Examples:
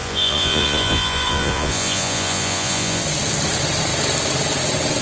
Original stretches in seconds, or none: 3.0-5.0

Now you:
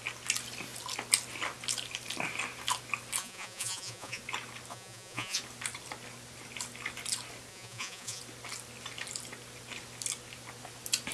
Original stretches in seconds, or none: 0.0-3.2; 4.2-4.7; 5.4-7.5; 8.2-11.1

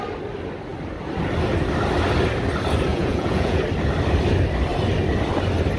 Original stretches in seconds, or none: 0.0-2.9; 3.6-5.8

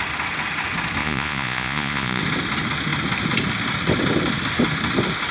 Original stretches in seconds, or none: 0.0-1.0; 2.2-5.3

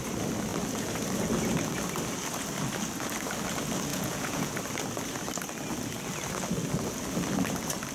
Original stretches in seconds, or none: 0.0-3.9; 4.5-7.9